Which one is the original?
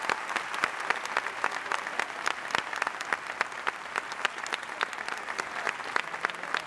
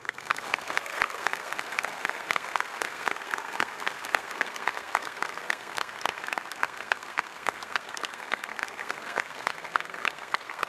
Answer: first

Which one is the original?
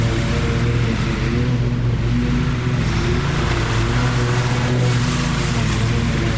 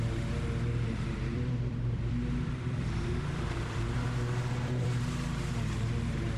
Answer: first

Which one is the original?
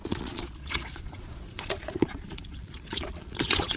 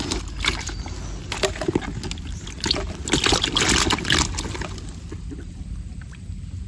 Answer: second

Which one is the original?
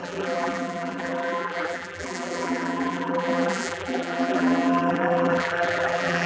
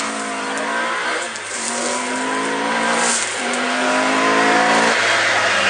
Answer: second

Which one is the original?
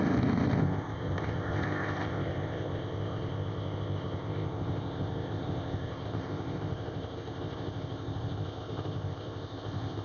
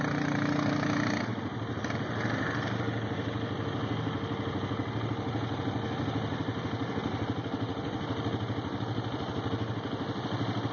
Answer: second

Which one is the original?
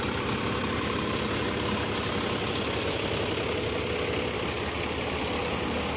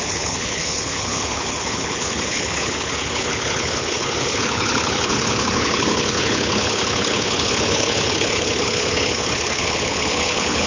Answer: first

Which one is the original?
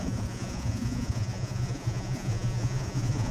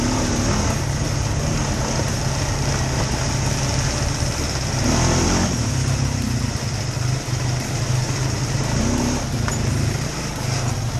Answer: second